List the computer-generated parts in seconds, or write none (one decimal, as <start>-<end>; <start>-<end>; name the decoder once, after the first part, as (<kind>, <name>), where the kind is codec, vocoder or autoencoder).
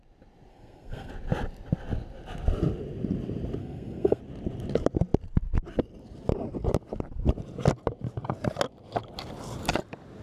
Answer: 0.5-1.1 (codec, SNAC); 3.6-4.2